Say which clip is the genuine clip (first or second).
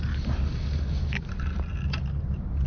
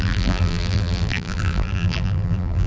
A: first